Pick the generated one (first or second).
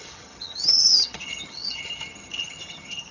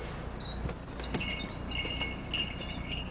first